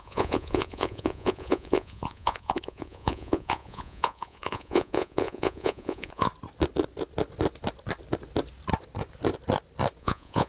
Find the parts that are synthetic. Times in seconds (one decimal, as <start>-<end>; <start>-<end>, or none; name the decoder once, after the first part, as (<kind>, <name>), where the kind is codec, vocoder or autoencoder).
0.0-6.3 (vocoder, Vocos); 10.0-10.5